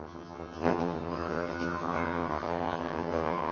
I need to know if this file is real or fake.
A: fake